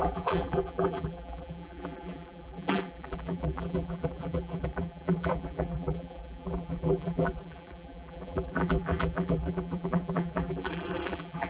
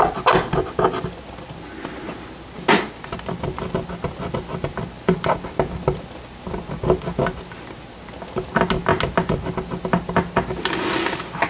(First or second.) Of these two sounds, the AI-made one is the first